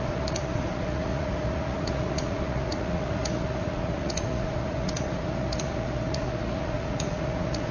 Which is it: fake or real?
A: fake